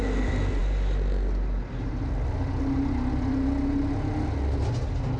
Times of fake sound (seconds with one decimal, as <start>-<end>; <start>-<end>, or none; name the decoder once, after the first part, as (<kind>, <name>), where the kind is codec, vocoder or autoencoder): none